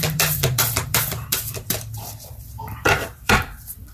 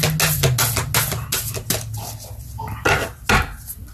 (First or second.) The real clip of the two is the second